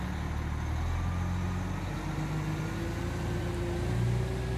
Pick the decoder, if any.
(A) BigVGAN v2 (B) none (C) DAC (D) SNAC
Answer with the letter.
B